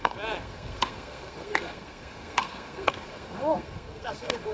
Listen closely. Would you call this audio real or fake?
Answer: fake